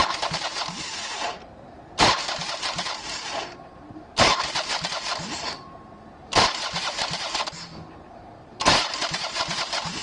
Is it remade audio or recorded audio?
remade